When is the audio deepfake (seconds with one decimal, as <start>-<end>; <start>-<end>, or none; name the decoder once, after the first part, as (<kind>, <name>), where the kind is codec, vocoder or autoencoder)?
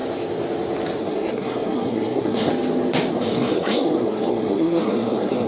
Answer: 1.0-2.5 (codec, SNAC); 3.1-5.5